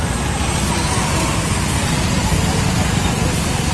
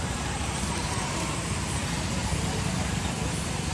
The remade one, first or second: second